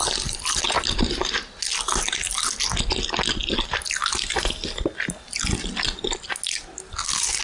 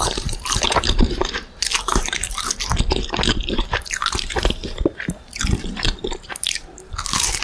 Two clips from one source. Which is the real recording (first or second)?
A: first